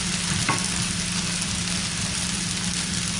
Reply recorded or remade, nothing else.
recorded